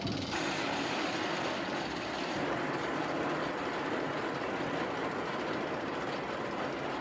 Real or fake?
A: real